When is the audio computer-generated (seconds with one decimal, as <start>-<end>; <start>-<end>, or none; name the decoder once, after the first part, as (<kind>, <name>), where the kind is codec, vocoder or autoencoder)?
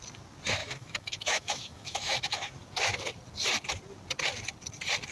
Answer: 0.6-2.5 (autoencoder, DAC-VAE)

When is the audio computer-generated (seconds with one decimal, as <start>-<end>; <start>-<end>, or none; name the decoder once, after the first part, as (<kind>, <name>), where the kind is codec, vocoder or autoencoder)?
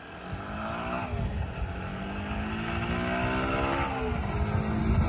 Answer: none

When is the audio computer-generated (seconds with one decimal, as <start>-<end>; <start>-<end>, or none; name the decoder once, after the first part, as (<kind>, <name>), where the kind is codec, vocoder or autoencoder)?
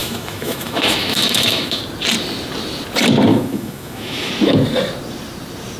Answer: 0.0-1.8 (autoencoder, DAC-VAE); 3.3-4.3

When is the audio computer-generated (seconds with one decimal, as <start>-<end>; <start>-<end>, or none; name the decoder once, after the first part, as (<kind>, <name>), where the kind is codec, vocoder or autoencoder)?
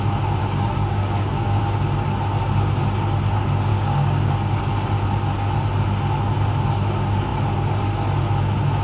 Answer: 0.4-1.6 (codec, DAC); 3.7-4.3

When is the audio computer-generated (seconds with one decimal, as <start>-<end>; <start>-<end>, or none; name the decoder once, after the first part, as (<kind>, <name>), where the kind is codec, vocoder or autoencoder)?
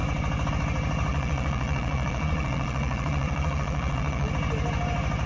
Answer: 1.1-4.3 (vocoder, Vocos)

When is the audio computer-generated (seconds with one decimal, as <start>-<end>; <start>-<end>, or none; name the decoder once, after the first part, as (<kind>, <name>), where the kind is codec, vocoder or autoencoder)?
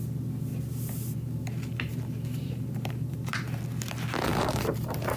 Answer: 1.9-3.6 (vocoder, BigVGAN v2); 4.3-5.2